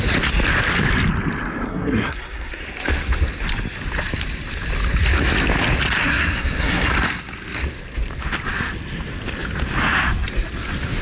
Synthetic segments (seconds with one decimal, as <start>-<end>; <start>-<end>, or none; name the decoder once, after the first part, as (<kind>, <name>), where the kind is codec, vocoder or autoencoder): 1.7-2.6 (codec, SNAC); 6.0-6.9